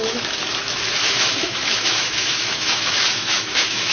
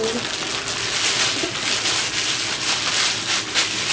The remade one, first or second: first